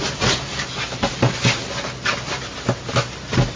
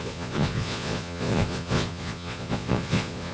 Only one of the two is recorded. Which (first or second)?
first